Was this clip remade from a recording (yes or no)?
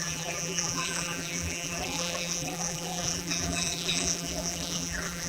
yes